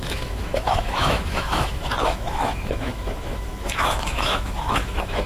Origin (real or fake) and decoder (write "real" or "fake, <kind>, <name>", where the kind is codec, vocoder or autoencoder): fake, autoencoder, DAC-VAE